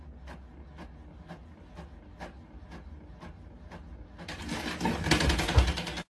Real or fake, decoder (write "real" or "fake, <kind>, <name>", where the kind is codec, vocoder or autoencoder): real